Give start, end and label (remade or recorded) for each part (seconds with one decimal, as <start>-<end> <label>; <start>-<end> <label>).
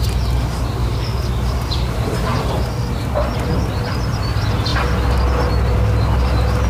0.0-0.8 recorded; 0.8-1.3 remade; 1.3-6.7 recorded